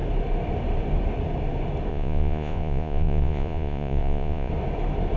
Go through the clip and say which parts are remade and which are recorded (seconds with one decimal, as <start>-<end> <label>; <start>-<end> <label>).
0.0-1.9 recorded; 1.9-4.5 remade; 4.5-5.2 recorded